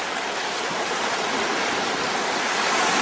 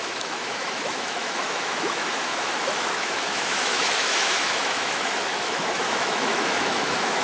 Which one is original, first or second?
first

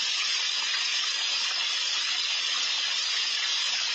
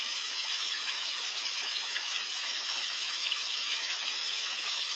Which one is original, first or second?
first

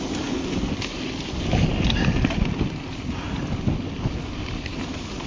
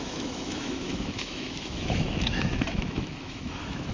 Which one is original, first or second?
first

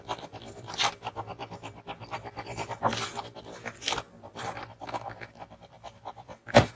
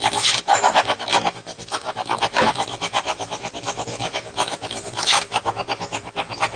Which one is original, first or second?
first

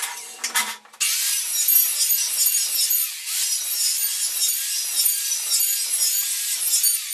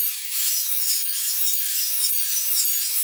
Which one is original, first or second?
first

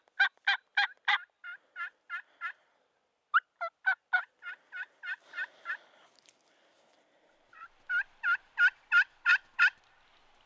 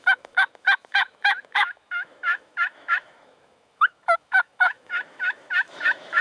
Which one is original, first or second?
first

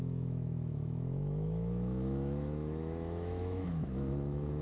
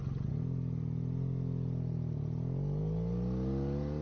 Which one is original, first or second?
second